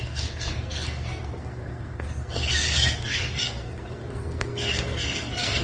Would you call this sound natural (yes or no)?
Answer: no